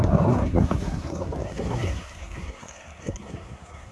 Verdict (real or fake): fake